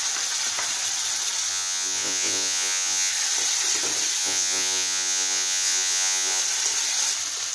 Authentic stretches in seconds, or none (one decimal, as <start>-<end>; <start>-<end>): 0.0-1.5; 3.1-4.2; 6.4-7.5